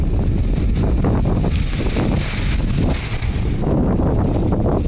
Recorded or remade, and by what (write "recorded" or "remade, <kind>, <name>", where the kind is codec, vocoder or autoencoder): recorded